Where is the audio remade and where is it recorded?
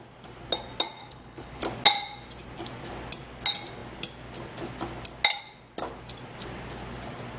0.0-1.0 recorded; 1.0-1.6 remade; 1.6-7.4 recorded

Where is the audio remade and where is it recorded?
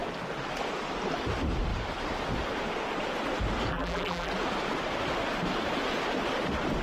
0.0-3.7 recorded; 3.7-4.3 remade; 4.3-6.8 recorded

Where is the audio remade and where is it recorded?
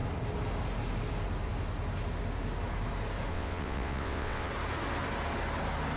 0.0-3.3 recorded; 3.3-4.5 remade; 4.5-6.0 recorded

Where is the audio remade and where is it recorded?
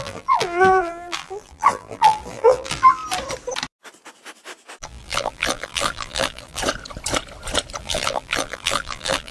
0.0-3.0 remade; 3.0-4.8 recorded; 4.8-6.6 remade; 6.6-7.8 recorded; 7.8-9.3 remade